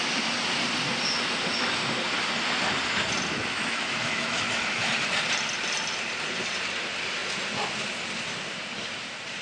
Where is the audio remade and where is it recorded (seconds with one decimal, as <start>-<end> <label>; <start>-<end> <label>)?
0.0-3.3 recorded; 3.3-4.9 remade; 4.9-9.4 recorded